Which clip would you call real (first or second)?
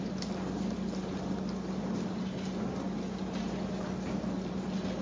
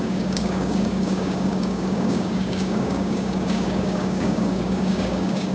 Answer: first